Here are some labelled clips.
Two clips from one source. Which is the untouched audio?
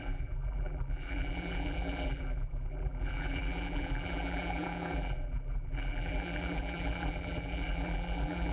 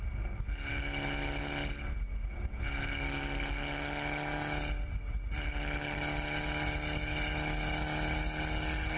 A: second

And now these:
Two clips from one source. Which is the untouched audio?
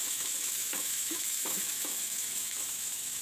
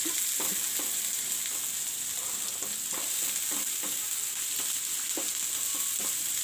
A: second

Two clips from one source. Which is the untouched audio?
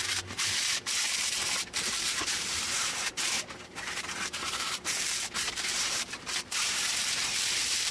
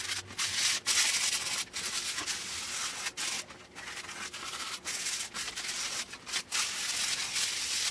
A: second